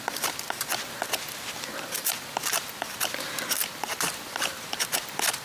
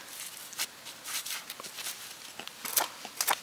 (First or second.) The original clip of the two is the second